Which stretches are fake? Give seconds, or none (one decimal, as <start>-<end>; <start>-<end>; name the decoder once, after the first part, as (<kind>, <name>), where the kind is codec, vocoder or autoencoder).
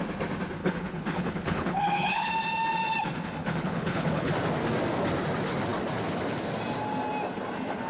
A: 0.6-2.3 (codec, HILCodec); 3.4-4.3